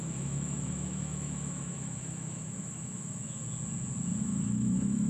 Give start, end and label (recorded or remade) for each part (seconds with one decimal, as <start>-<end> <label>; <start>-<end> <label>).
0.0-3.4 remade; 3.4-4.2 recorded; 4.2-5.1 remade